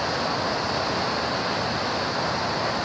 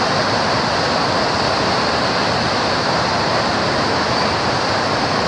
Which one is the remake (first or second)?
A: second